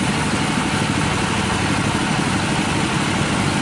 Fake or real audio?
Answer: real